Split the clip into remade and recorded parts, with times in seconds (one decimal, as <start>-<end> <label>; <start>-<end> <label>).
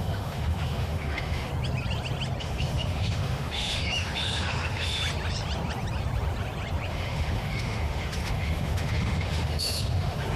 0.0-1.5 remade; 1.5-2.4 recorded; 2.4-5.0 remade; 5.0-6.9 recorded; 6.9-10.4 remade